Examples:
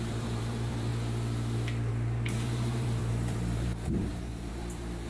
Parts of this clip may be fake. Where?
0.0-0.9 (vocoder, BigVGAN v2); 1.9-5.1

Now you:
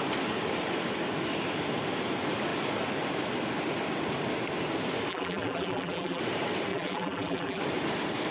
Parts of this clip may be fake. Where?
5.1-6.2 (vocoder, BigVGAN v2); 6.7-7.6